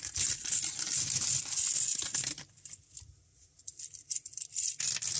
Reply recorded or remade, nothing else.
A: recorded